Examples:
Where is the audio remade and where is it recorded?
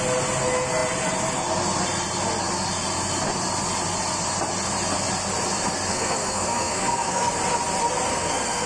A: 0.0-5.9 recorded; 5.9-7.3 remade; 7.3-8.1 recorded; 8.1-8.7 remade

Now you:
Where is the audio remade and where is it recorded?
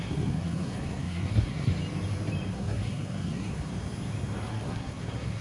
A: 0.0-1.7 remade; 1.7-2.5 recorded; 2.5-3.7 remade; 3.7-4.5 recorded; 4.5-5.4 remade